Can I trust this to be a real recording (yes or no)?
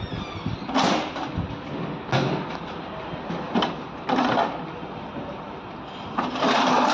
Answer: yes